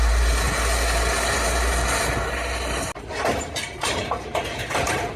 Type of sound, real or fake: real